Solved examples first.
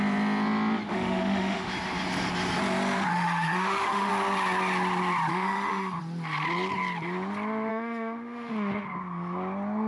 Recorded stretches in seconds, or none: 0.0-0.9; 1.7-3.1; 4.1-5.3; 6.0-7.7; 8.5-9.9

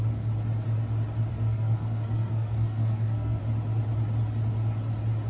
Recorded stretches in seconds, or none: 0.0-1.3; 3.4-5.3

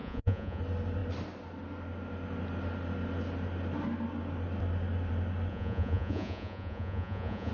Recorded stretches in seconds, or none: 0.6-5.5

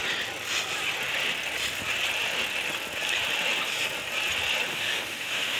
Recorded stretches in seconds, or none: 0.0-4.7

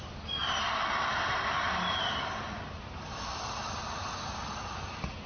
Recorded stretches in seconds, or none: 0.0-5.3

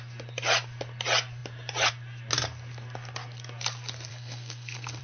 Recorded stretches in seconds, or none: 0.0-4.1

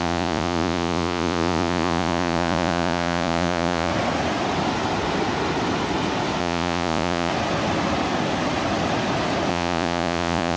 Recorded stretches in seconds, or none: 3.9-6.4; 7.3-9.5